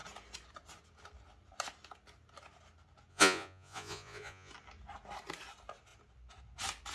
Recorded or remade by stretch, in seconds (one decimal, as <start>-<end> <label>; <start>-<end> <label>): 0.0-3.1 recorded; 3.1-4.5 remade; 4.5-6.9 recorded